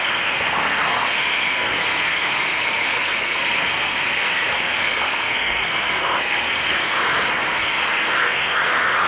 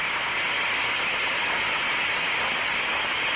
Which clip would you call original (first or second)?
second